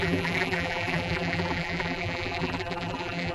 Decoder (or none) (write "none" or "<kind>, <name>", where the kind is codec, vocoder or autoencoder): vocoder, BigVGAN v2